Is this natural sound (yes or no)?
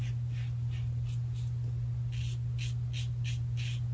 yes